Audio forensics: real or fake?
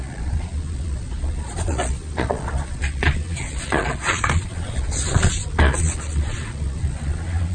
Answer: fake